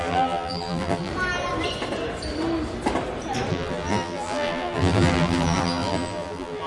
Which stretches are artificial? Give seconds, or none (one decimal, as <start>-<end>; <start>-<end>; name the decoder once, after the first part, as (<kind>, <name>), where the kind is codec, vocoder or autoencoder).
0.0-1.1 (vocoder, BigVGAN v2); 3.5-6.7